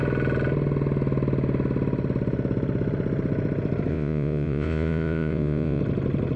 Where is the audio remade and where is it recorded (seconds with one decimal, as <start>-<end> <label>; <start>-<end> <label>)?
0.0-3.9 recorded; 3.9-5.8 remade; 5.8-6.4 recorded